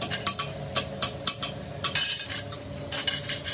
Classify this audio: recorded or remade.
recorded